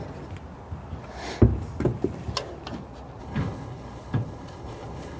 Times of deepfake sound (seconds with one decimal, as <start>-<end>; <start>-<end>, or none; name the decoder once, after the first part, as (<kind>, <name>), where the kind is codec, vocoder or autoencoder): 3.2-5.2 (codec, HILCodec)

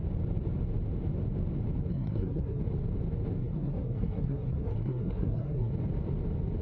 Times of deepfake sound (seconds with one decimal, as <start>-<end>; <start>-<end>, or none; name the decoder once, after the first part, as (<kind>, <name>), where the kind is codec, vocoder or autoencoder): 1.9-2.6 (codec, SNAC); 3.4-5.7

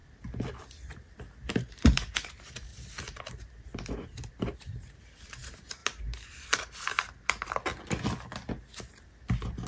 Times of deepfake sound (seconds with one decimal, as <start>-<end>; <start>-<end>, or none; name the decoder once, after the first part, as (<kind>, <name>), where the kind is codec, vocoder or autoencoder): 1.5-2.7 (vocoder, BigVGAN v2); 3.3-5.8

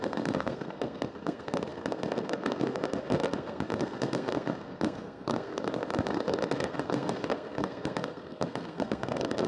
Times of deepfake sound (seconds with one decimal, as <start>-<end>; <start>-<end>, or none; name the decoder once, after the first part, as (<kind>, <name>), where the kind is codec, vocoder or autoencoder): 0.0-9.5 (codec, SNAC)

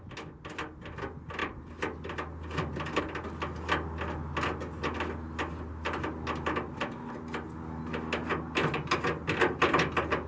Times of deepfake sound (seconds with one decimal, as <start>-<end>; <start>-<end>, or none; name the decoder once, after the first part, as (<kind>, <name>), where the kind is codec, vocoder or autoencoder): 1.4-3.0 (vocoder, BigVGAN v2)

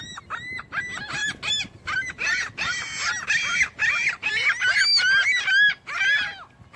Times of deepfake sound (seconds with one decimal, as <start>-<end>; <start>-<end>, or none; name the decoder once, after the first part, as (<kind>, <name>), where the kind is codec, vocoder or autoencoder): none